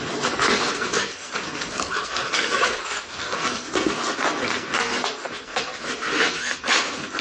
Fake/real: fake